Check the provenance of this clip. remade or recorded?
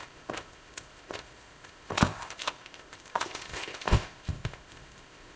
remade